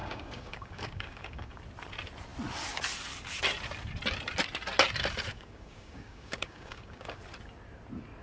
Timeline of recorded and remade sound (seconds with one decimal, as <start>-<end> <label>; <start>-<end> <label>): 0.0-1.6 remade; 1.6-5.3 recorded; 5.3-7.2 remade; 7.2-8.2 recorded